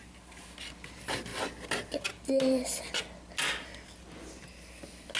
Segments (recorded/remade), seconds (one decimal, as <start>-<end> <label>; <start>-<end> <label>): 0.0-5.2 recorded